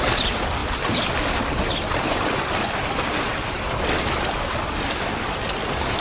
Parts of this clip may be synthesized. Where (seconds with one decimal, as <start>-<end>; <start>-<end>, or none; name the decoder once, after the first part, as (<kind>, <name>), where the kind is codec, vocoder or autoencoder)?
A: none

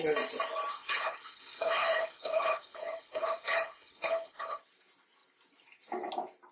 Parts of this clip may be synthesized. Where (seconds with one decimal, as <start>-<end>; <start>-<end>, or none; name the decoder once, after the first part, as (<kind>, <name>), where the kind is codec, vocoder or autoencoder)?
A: 0.7-4.6 (codec, HILCodec)

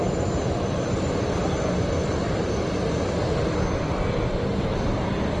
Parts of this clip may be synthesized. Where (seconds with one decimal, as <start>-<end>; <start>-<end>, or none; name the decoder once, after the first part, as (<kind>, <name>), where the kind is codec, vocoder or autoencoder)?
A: none

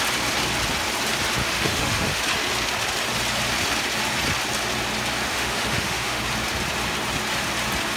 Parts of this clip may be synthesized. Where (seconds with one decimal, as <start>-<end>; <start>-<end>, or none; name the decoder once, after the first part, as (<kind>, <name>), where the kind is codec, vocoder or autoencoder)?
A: 1.4-2.2 (autoencoder, DAC-VAE); 5.3-6.2

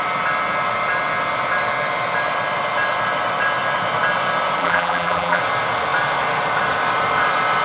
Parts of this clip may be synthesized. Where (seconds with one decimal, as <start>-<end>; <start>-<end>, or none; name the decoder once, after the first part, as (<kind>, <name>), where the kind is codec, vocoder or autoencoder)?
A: 4.6-5.4 (vocoder, BigVGAN v2)